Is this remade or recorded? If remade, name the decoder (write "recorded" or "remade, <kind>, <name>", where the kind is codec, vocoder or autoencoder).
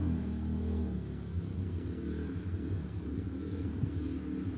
remade, codec, SNAC